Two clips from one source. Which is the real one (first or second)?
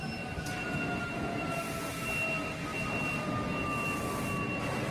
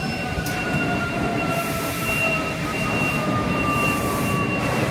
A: first